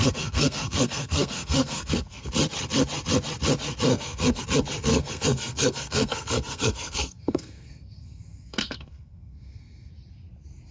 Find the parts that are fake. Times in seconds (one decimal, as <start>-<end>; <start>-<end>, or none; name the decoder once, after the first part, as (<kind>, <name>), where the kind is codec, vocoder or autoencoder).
0.0-2.3 (codec, SNAC); 3.9-4.4; 4.9-9.9